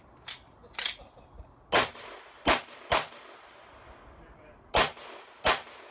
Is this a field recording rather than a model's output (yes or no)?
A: yes